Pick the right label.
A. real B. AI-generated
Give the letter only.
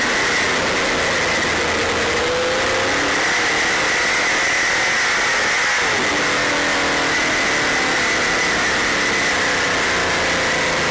A